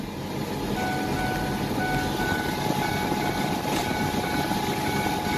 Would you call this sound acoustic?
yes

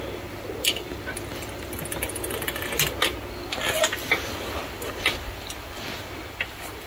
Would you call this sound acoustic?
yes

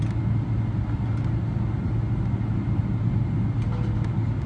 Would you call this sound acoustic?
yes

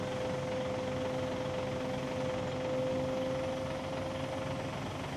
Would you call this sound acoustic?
yes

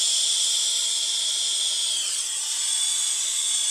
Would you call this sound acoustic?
yes